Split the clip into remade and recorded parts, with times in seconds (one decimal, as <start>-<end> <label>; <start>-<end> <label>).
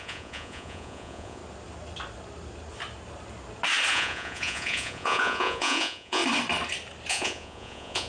0.0-1.4 remade; 1.4-3.9 recorded; 3.9-6.2 remade; 6.2-7.1 recorded; 7.1-8.1 remade